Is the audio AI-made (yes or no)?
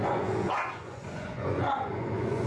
yes